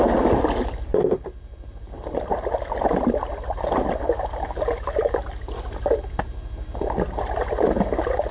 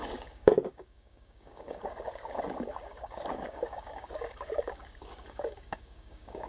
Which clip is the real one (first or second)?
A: first